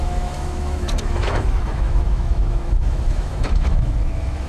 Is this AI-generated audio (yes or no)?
yes